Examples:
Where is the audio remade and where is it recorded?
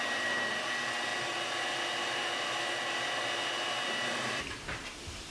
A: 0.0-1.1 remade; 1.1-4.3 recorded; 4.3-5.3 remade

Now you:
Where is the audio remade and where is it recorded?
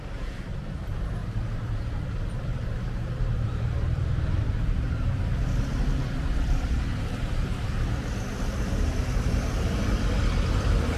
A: 0.0-7.1 remade; 7.1-8.6 recorded; 8.6-11.0 remade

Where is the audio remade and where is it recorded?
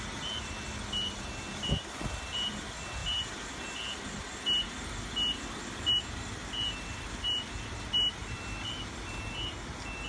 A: 0.0-10.1 recorded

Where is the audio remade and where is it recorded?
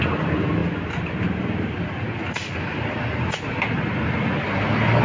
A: 0.0-5.0 recorded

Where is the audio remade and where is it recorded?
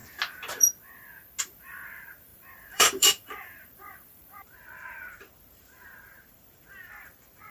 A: 0.0-1.4 recorded; 1.4-7.5 remade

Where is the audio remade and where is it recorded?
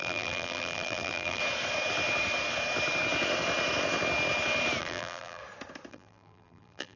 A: 0.0-1.4 remade; 1.4-4.8 recorded; 4.8-5.4 remade; 5.4-5.9 recorded; 5.9-7.0 remade